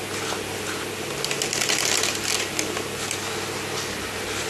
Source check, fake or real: real